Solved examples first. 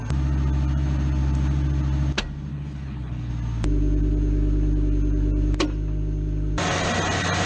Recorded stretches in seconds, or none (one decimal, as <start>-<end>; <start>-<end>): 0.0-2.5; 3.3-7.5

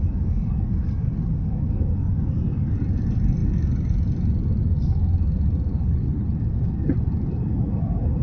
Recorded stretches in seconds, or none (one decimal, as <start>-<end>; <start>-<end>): 0.0-5.7; 6.3-8.2

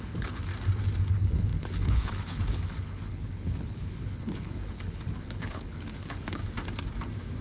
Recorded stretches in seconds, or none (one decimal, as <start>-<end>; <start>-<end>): 0.5-1.1; 6.4-7.4

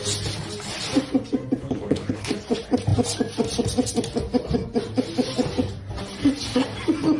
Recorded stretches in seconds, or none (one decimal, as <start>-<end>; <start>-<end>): 0.0-1.6; 2.3-7.2